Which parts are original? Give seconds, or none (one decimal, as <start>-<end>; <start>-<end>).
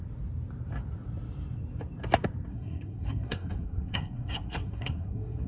0.0-2.5